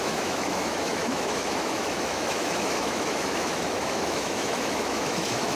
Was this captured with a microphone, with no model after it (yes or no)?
no